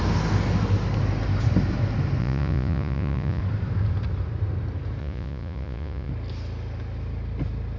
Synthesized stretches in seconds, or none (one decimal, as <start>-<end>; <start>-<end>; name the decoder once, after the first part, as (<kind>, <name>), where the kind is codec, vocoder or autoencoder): 2.2-3.4 (vocoder, Vocos); 5.0-6.1